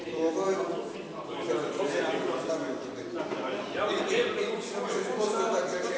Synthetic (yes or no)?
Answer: yes